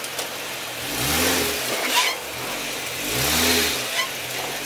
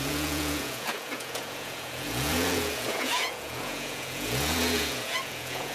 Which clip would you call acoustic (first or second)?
first